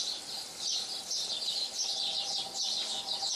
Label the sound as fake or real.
real